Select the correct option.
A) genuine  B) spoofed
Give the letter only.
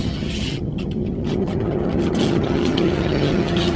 B